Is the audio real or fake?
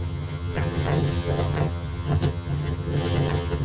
fake